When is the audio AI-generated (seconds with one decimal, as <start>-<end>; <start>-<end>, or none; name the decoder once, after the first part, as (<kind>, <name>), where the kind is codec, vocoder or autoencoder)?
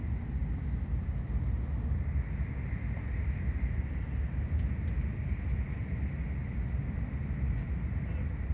none